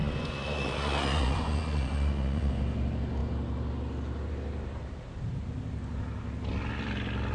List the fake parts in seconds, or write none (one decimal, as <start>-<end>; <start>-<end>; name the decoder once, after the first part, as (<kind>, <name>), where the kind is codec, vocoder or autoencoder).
0.0-2.5 (vocoder, Vocos)